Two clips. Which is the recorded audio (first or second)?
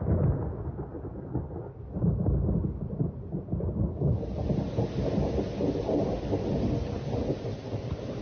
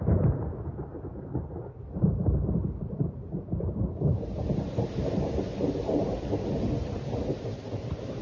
first